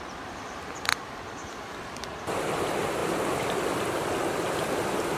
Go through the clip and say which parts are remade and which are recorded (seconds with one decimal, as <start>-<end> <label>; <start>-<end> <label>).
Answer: 0.0-3.0 recorded; 3.0-3.8 remade; 3.8-5.2 recorded